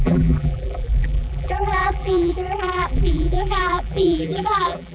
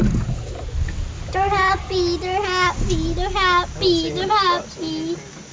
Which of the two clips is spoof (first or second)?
first